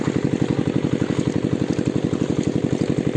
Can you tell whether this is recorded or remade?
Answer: recorded